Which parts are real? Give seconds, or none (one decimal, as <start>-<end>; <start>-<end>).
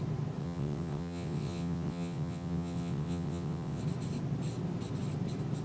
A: 0.0-0.4; 3.8-5.6